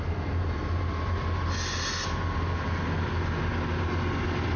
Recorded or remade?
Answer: recorded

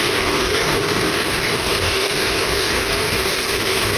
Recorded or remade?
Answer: remade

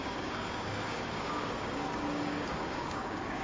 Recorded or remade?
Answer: remade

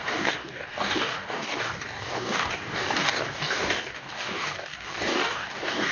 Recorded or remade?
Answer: remade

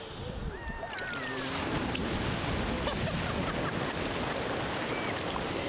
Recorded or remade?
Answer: recorded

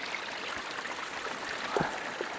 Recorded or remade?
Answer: recorded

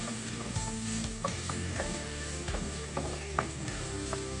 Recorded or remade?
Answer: remade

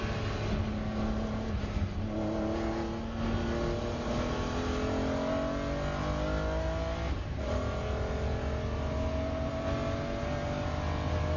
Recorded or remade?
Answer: recorded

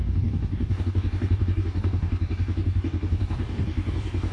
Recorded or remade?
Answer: remade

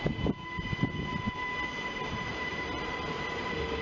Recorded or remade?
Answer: recorded